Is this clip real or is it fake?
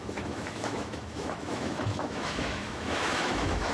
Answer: fake